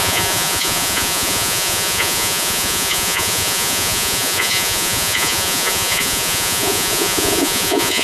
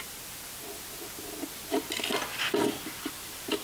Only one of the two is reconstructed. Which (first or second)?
first